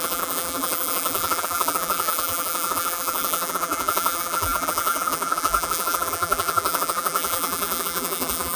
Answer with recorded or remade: remade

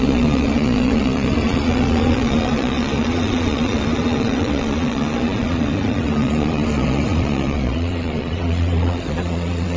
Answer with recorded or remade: remade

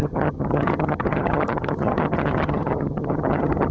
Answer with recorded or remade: remade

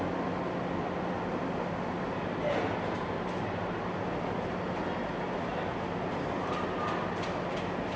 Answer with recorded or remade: recorded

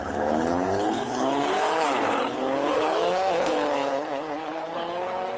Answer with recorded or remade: remade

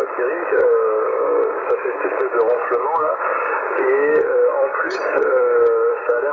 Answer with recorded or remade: remade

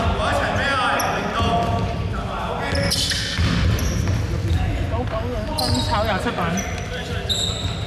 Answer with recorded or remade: recorded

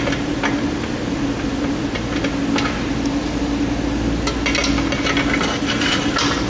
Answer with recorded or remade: recorded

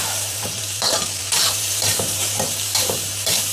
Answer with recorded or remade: remade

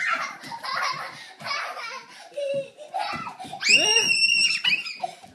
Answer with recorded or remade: recorded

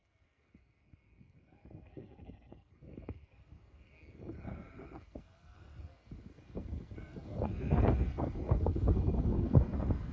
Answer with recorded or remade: remade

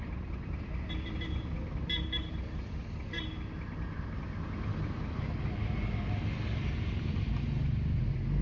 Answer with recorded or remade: recorded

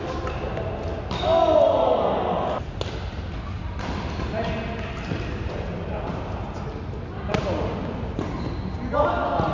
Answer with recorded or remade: recorded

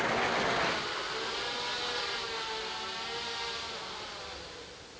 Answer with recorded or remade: recorded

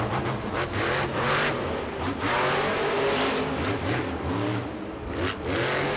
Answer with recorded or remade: recorded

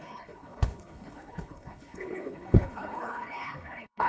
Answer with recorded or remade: remade